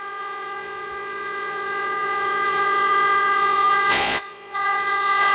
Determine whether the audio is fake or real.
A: fake